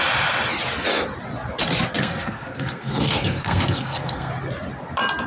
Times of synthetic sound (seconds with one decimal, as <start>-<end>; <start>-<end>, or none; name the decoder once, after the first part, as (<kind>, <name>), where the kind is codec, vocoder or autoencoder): 2.0-4.3 (codec, SNAC)